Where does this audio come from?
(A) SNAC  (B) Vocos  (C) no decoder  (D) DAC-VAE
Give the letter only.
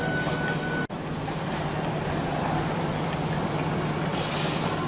C